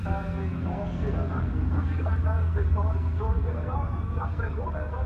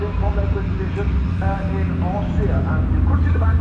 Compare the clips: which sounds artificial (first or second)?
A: first